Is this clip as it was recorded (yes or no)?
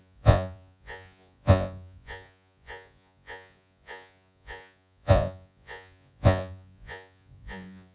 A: no